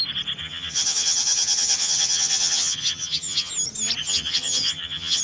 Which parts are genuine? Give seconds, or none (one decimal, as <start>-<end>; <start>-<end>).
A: 0.0-0.4; 3.5-4.0